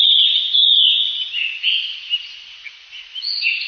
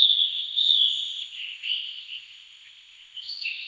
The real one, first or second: first